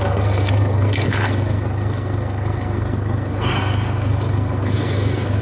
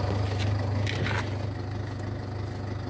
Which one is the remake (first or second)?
first